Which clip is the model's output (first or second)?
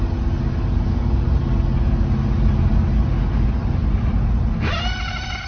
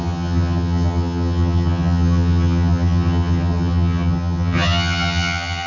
second